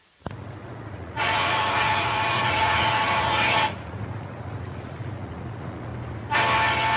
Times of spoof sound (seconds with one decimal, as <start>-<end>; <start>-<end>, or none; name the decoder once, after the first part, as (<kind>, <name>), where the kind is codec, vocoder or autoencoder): 0.0-5.9 (vocoder, Vocos)